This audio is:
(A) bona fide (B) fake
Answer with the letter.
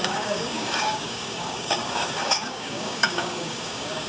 B